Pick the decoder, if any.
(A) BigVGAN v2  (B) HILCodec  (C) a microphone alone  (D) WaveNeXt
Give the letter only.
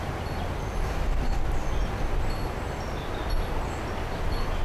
C